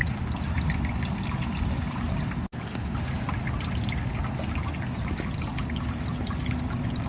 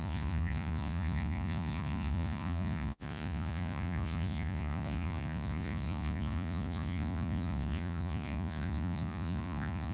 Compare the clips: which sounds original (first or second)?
first